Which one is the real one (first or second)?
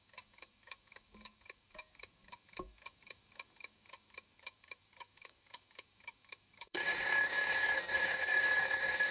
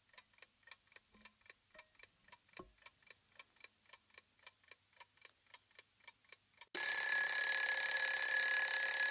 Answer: second